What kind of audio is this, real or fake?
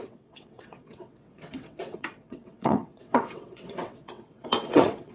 fake